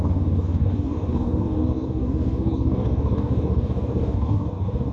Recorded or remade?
remade